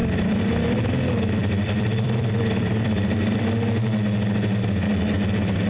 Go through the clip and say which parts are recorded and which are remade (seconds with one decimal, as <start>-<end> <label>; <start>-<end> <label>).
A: 0.0-1.4 recorded; 1.4-3.4 remade; 3.4-5.7 recorded